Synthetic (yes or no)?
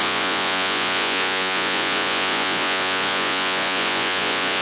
yes